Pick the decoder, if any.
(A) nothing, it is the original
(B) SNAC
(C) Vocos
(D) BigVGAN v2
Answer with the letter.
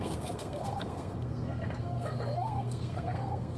B